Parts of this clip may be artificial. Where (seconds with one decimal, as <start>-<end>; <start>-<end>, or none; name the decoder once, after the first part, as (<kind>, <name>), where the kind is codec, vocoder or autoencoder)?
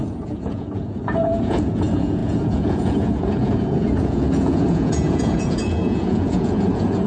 0.0-7.1 (vocoder, Vocos)